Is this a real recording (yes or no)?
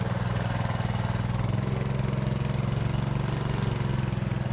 yes